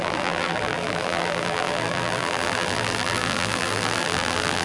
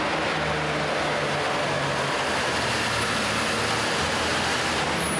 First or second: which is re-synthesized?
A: first